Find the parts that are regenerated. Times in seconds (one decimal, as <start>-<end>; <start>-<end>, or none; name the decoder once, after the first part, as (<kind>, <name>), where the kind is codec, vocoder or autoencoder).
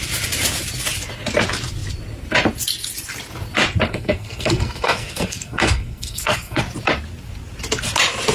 3.9-6.6 (codec, SNAC)